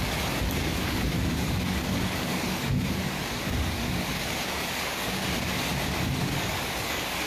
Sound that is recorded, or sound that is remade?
remade